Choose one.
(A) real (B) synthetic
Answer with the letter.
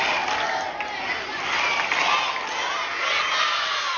A